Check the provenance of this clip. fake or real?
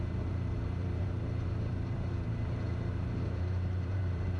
fake